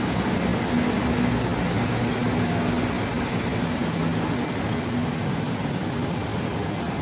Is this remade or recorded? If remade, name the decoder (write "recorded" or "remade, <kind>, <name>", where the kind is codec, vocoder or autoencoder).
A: recorded